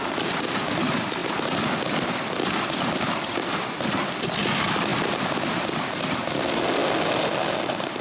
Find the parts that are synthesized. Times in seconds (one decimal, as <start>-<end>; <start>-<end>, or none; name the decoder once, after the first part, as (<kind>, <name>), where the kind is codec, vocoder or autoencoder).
0.0-1.2 (vocoder, BigVGAN v2); 2.9-4.9; 5.5-8.0